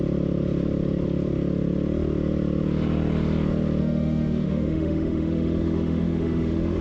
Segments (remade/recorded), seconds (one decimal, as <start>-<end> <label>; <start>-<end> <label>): 0.0-3.8 recorded; 3.8-6.8 remade